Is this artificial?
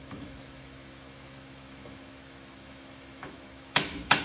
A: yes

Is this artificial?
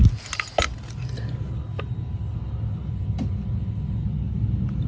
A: no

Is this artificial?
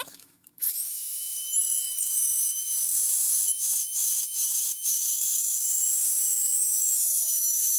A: yes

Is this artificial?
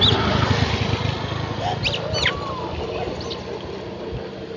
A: no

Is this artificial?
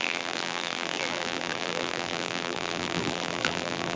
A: yes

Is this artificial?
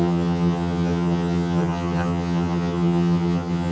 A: yes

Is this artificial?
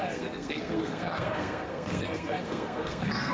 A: yes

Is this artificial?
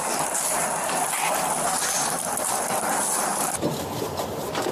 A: no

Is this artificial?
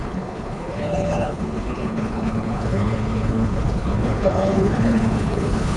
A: yes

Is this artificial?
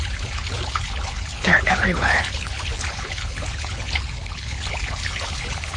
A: yes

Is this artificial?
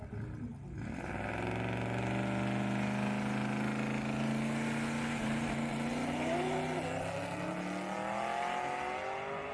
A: no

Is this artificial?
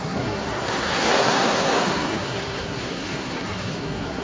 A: yes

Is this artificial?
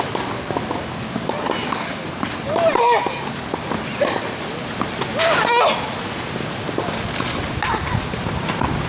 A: no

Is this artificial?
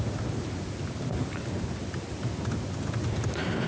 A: no